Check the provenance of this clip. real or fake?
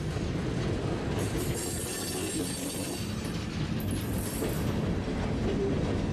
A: real